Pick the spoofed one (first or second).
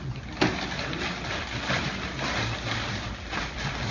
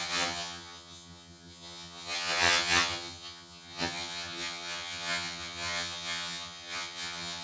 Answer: second